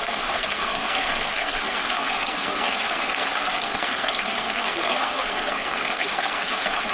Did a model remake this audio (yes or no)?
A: yes